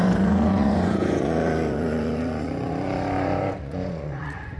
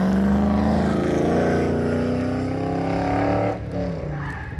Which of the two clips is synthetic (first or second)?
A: first